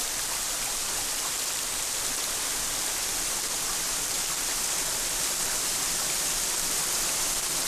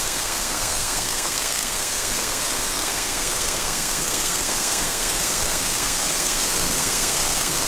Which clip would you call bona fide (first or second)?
first